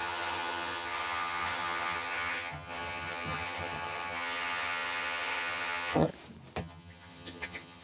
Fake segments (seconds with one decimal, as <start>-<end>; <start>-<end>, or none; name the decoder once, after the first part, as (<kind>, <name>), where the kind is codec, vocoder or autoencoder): 0.0-6.1 (vocoder, HiFi-GAN); 6.6-7.8